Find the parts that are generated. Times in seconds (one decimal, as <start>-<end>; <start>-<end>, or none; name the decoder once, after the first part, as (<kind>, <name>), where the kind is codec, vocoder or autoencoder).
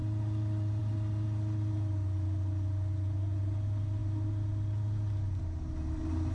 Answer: none